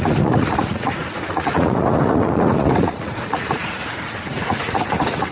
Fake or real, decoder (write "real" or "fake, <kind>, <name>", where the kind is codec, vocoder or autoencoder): fake, vocoder, Vocos